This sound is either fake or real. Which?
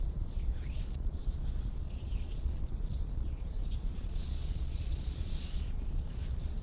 fake